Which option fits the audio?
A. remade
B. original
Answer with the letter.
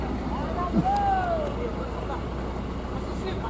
B